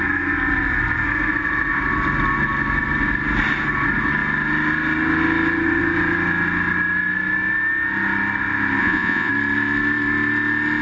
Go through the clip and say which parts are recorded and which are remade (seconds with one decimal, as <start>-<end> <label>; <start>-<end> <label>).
0.0-8.8 recorded; 8.8-9.3 remade; 9.3-10.8 recorded